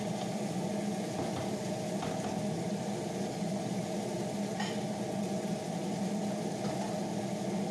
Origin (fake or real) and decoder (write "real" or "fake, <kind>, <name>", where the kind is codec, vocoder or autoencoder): real